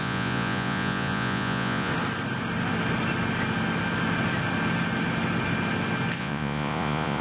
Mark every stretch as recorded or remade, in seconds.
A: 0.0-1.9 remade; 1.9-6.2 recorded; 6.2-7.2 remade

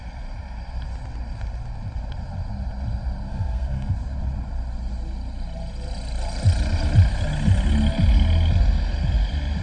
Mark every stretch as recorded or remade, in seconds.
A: 0.0-3.3 recorded; 3.3-3.9 remade; 3.9-9.6 recorded

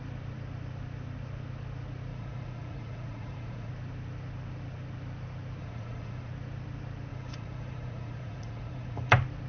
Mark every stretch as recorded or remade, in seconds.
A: 0.0-2.1 recorded; 2.1-3.7 remade; 3.7-5.6 recorded; 5.6-6.3 remade; 6.3-7.1 recorded; 7.1-9.1 remade; 9.1-9.5 recorded

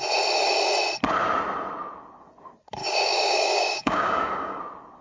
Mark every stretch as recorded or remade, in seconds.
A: 0.0-2.8 recorded; 2.8-4.6 remade; 4.6-5.0 recorded

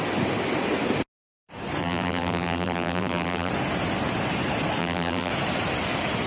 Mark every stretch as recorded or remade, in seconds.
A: 0.0-1.8 recorded; 1.8-3.5 remade; 3.5-4.8 recorded; 4.8-5.3 remade; 5.3-6.3 recorded

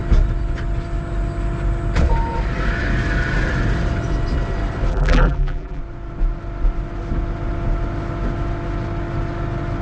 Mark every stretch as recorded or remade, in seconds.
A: 0.0-4.9 recorded; 4.9-5.8 remade; 5.8-9.8 recorded

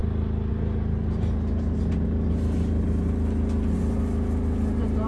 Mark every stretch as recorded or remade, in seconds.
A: 0.0-5.1 recorded